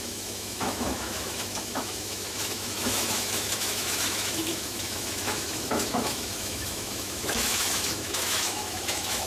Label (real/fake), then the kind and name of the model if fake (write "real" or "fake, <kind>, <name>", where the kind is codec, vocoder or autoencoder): fake, autoencoder, DAC-VAE